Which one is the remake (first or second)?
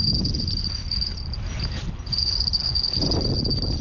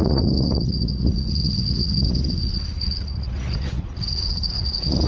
second